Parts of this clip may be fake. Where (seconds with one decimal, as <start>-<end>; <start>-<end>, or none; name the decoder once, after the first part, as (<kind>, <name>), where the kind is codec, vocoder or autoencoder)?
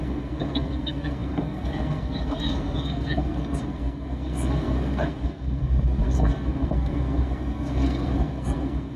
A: 0.0-9.0 (codec, SNAC)